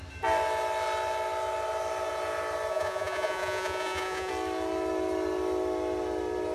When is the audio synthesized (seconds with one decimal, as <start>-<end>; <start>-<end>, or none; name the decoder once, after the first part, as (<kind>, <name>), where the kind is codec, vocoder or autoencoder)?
2.7-4.3 (vocoder, Vocos)